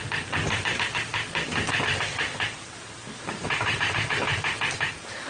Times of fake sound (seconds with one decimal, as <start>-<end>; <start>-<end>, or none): none